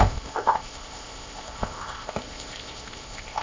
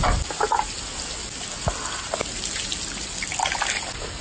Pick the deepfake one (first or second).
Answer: first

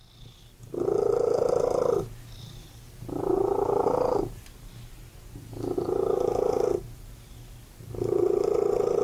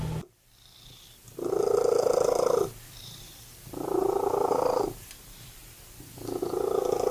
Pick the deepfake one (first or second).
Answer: second